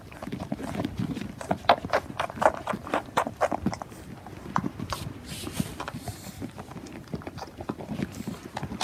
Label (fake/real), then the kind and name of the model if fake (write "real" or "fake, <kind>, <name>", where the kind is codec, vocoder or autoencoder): fake, vocoder, BigVGAN v2